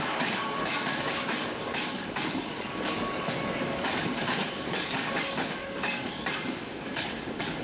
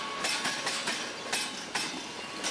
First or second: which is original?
second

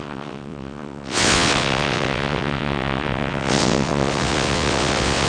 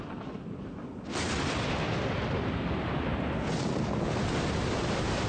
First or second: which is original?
second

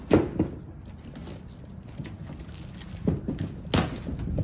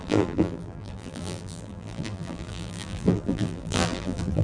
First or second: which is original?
first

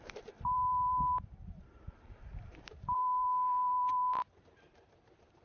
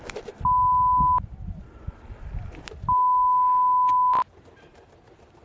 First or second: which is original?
second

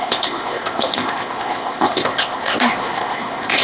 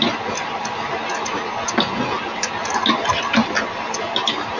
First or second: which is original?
second